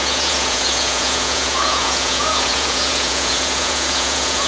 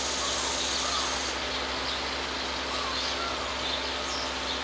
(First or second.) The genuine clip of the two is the second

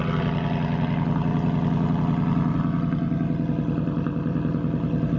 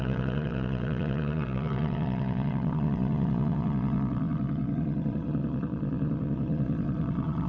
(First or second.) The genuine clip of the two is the first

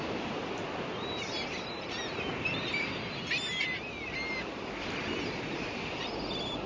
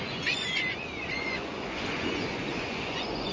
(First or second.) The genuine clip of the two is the first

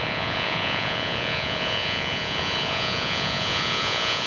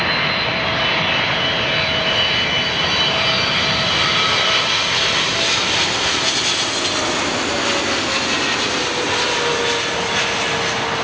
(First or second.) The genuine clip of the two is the second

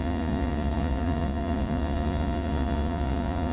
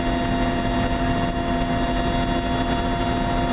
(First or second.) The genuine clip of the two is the second